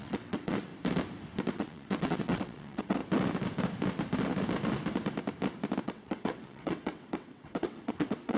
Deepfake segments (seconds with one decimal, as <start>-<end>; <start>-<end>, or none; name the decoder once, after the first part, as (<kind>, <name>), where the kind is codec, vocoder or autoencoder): 0.0-0.7 (vocoder, WaveNeXt); 1.5-3.0; 5.8-8.4